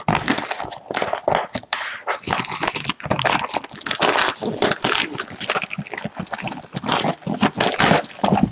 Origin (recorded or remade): recorded